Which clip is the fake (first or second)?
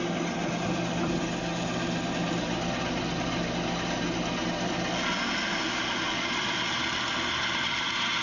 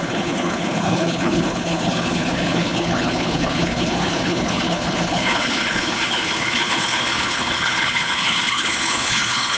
second